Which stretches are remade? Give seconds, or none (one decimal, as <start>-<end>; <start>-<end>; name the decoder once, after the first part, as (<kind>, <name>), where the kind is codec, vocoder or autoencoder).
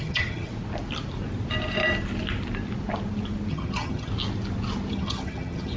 0.0-0.5 (vocoder, HiFi-GAN); 3.5-4.1; 4.9-5.8